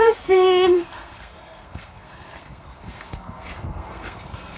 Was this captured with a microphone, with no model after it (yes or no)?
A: no